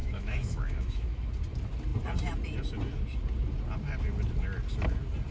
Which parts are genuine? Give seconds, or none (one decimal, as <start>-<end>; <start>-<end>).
1.2-5.3